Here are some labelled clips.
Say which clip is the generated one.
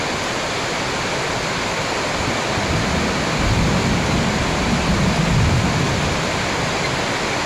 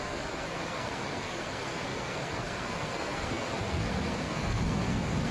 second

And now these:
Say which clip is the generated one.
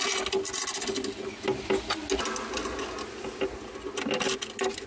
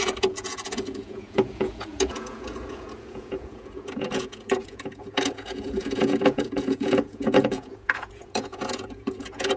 second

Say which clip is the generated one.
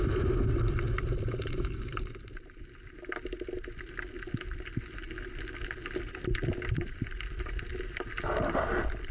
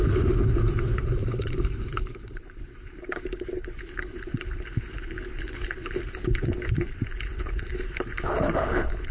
second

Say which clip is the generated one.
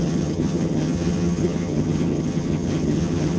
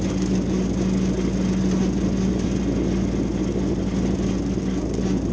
first